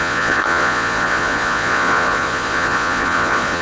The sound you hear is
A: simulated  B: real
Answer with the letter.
A